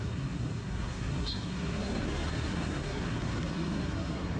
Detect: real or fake fake